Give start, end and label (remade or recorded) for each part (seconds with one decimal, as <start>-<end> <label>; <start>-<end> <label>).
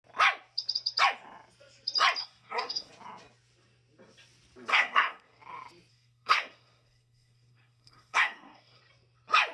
0.0-2.2 recorded; 2.2-2.9 remade; 2.9-4.7 recorded; 4.7-5.4 remade; 5.4-5.9 recorded; 5.9-8.8 remade; 8.8-9.5 recorded